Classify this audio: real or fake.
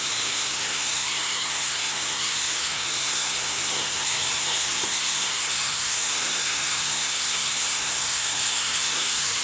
fake